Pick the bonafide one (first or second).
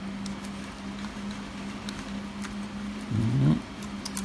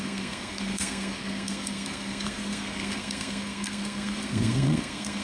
first